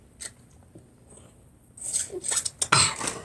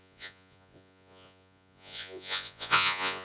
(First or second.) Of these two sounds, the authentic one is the first